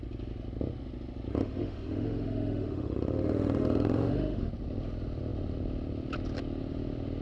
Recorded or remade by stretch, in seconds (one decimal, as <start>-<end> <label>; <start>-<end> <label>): 0.0-1.3 recorded; 1.3-4.5 remade; 4.5-7.2 recorded